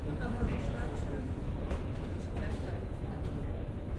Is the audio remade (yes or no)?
yes